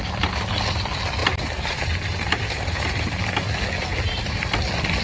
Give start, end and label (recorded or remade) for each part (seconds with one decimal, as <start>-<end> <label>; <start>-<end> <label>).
0.0-1.2 recorded; 1.2-3.2 remade; 3.2-3.9 recorded; 3.9-4.6 remade; 4.6-5.0 recorded